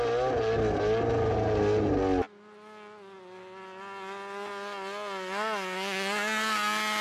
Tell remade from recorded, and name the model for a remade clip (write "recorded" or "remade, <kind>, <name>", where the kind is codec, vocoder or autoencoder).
recorded